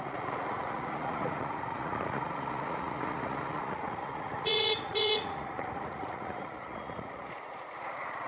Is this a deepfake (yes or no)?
yes